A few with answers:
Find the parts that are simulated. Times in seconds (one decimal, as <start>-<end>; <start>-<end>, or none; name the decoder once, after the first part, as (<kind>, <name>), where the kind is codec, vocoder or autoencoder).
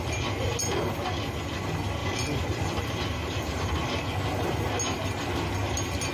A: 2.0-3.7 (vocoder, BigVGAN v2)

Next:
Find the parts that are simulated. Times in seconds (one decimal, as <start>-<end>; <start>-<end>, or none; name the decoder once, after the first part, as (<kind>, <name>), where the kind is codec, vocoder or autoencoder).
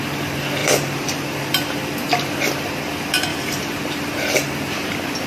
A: 0.6-1.7 (vocoder, BigVGAN v2); 3.3-4.1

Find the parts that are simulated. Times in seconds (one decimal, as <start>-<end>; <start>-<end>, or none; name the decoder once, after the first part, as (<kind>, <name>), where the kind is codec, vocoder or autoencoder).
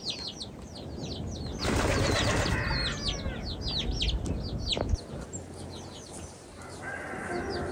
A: none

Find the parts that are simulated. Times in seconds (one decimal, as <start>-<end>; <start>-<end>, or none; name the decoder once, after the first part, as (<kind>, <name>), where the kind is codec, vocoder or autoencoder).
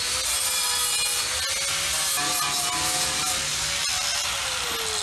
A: none